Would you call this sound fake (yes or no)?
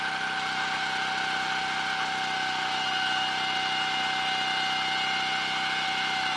no